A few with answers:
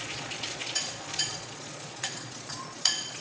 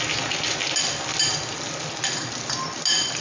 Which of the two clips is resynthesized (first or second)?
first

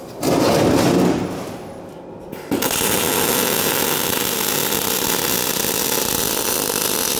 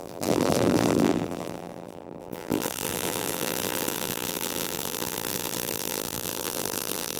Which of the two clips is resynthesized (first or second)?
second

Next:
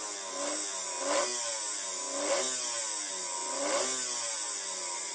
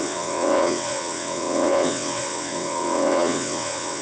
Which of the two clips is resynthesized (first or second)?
second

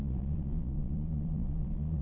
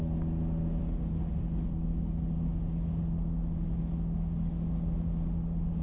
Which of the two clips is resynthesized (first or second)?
first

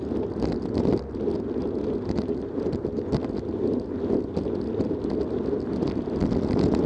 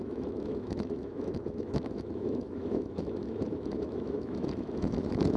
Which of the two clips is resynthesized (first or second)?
second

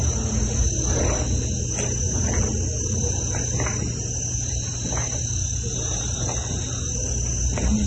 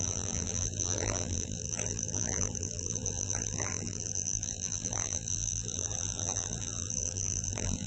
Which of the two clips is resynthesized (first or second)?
second